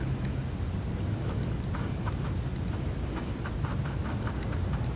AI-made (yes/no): no